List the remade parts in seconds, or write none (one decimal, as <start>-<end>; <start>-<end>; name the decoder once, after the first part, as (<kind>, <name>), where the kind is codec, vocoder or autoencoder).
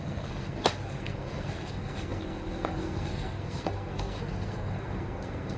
0.0-5.6 (codec, SNAC)